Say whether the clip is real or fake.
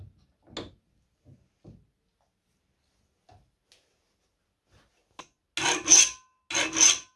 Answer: real